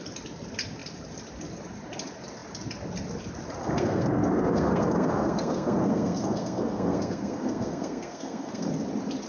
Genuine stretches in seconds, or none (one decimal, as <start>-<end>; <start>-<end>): 0.0-3.6; 8.7-9.3